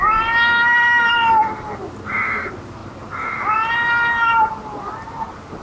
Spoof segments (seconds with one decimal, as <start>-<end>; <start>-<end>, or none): 2.8-4.6